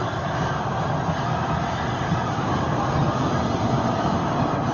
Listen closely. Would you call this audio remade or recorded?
recorded